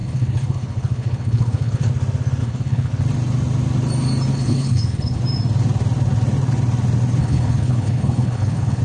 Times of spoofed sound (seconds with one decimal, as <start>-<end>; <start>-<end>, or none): 0.0-1.9; 2.4-2.9; 4.3-5.2; 7.2-8.8